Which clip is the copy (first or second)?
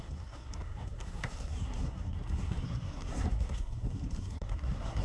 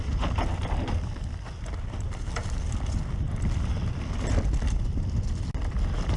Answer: first